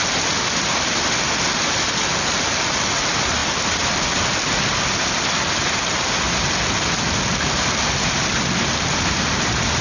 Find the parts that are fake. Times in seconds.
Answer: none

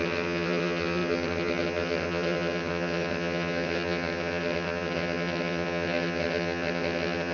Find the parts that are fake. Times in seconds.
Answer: 0.0-7.3 (vocoder, HiFi-GAN)

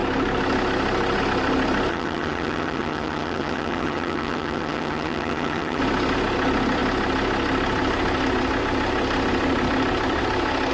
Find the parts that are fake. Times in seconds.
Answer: 1.9-5.8 (vocoder, HiFi-GAN)

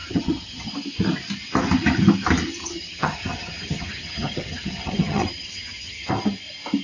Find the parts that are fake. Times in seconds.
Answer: 0.0-0.7 (vocoder, HiFi-GAN); 2.6-6.1

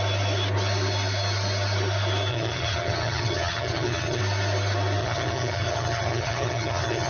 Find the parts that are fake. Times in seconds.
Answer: 2.3-4.2 (vocoder, HiFi-GAN); 5.0-7.1

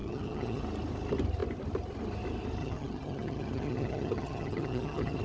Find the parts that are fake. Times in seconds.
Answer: 0.0-0.6 (vocoder, HiFi-GAN); 2.6-5.2